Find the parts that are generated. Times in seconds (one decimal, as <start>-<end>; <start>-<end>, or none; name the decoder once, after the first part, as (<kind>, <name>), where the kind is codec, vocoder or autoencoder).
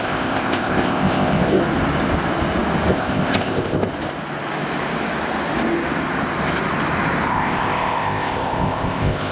0.0-1.6 (codec, ZipCodec); 2.9-3.9; 7.3-9.3